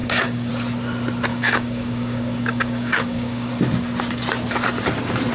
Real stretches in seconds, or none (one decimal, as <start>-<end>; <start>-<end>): 0.5-1.3; 3.5-5.3